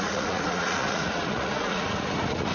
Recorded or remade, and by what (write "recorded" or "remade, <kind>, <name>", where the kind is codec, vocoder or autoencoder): remade, vocoder, Vocos